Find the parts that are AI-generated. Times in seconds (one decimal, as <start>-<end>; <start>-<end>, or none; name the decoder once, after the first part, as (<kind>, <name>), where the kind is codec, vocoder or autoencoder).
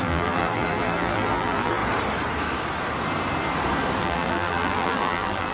0.0-1.8 (vocoder, BigVGAN v2); 4.0-5.5